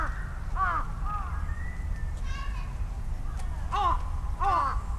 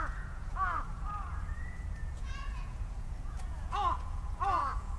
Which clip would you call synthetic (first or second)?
second